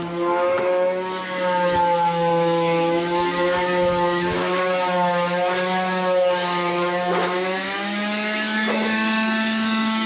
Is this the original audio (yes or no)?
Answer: no